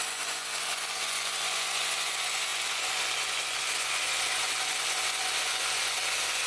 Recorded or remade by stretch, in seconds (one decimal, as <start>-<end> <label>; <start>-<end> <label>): 0.0-6.5 remade